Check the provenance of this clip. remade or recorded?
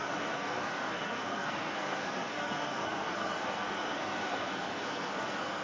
remade